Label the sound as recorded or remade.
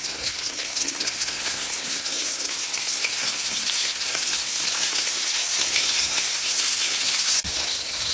remade